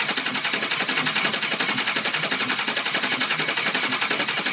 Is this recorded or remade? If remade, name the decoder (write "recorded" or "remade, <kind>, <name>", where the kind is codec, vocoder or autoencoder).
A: recorded